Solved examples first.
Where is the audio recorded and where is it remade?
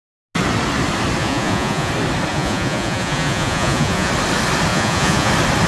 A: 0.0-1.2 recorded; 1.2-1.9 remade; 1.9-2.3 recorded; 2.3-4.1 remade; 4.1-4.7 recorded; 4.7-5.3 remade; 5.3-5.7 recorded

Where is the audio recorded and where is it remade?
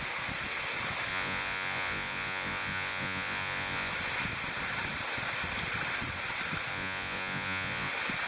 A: 0.0-1.1 recorded; 1.1-3.9 remade; 3.9-6.7 recorded; 6.7-7.9 remade; 7.9-8.3 recorded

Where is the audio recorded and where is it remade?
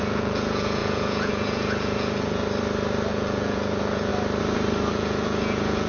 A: 0.0-2.4 remade; 2.4-3.1 recorded; 3.1-4.1 remade; 4.1-4.9 recorded; 4.9-5.9 remade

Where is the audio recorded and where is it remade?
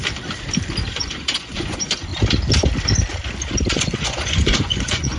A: 0.0-0.9 recorded; 0.9-2.1 remade; 2.1-3.7 recorded; 3.7-5.2 remade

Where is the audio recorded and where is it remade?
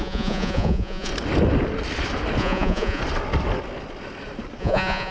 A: 0.0-1.1 remade; 1.1-2.4 recorded; 2.4-3.0 remade; 3.0-4.6 recorded; 4.6-5.1 remade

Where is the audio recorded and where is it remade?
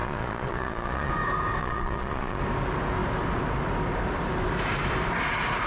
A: 0.0-1.1 remade; 1.1-1.6 recorded; 1.6-2.4 remade; 2.4-5.7 recorded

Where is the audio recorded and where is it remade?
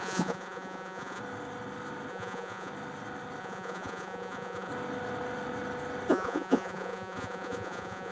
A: 0.0-1.2 remade; 1.2-2.1 recorded; 2.1-2.7 remade; 2.7-3.4 recorded; 3.4-4.7 remade; 4.7-6.1 recorded; 6.1-8.1 remade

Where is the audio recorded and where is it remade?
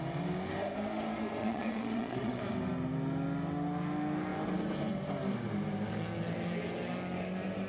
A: 0.0-1.4 recorded; 1.4-2.4 remade; 2.4-7.7 recorded